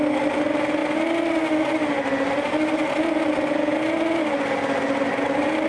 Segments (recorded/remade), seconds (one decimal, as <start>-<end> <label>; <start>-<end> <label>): 0.0-5.7 recorded

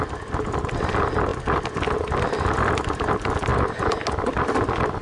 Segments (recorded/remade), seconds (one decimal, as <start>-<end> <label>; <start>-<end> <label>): 0.0-3.5 recorded; 3.5-5.0 remade

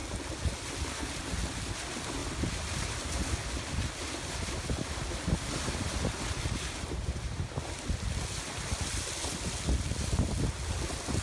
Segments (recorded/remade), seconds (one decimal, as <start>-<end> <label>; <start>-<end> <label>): 0.0-11.2 recorded

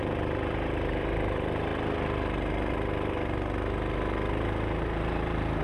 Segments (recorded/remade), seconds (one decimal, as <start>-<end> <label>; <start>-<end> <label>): 0.0-1.7 remade; 1.7-4.3 recorded; 4.3-5.6 remade

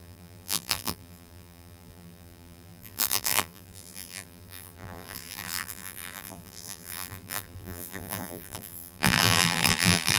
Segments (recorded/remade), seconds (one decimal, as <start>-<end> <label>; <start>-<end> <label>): 0.0-10.2 remade